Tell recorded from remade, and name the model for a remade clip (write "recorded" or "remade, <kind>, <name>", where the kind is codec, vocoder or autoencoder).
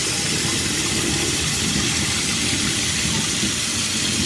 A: recorded